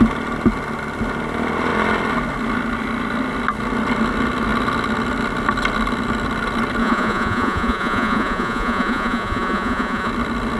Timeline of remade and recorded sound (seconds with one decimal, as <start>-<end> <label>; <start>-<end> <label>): 0.0-6.8 recorded; 6.8-10.1 remade; 10.1-10.6 recorded